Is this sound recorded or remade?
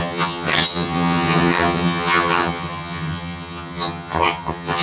remade